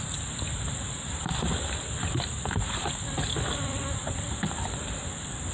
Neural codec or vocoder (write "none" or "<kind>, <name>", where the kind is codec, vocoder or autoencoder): none